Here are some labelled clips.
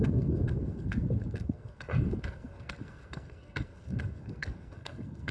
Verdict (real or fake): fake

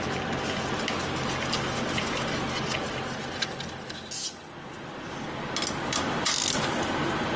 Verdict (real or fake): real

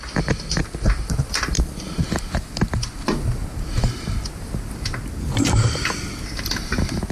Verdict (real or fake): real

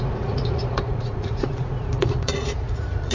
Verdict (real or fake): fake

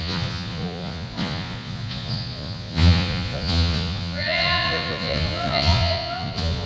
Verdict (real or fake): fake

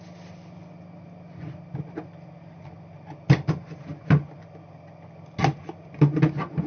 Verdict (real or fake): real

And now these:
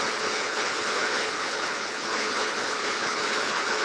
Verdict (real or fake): fake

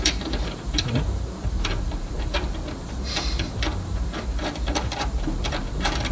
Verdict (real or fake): fake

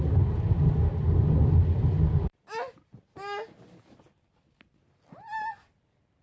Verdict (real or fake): real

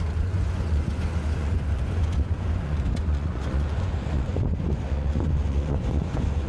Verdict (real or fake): fake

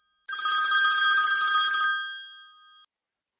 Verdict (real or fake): real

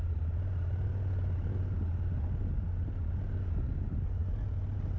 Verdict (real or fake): real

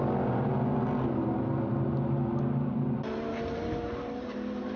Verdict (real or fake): real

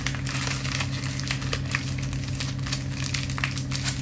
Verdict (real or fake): real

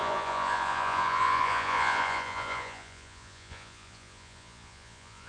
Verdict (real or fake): fake